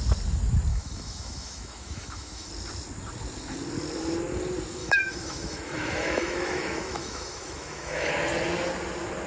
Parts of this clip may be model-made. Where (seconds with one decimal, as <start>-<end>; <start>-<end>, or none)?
0.7-2.5; 4.8-8.1